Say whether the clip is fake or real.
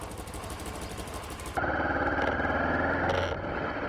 real